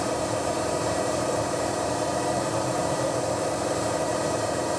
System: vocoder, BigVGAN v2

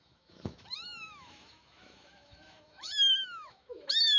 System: autoencoder, DAC-VAE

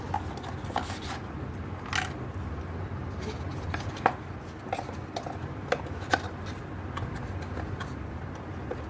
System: none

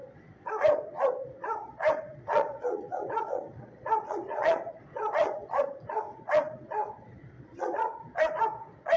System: vocoder, Vocos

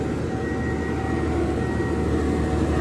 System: none